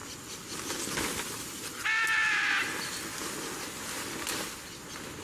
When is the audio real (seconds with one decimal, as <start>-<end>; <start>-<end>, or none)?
0.0-5.2